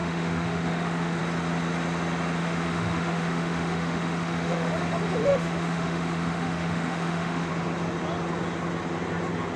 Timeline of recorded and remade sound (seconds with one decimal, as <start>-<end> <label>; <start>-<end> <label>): 0.0-1.2 remade; 1.2-2.4 recorded; 2.4-4.7 remade; 4.7-5.2 recorded; 5.2-7.5 remade; 7.5-9.6 recorded